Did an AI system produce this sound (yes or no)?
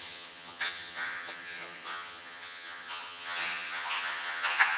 yes